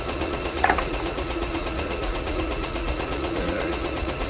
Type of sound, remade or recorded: remade